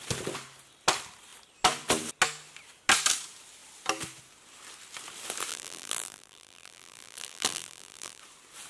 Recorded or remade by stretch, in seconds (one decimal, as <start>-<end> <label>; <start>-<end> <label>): 0.0-5.5 recorded; 5.5-8.2 remade; 8.2-8.7 recorded

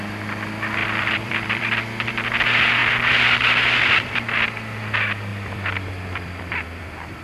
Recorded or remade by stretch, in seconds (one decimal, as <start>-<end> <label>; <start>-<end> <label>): 0.0-0.8 recorded; 0.8-2.1 remade; 2.1-5.3 recorded; 5.3-6.8 remade; 6.8-7.2 recorded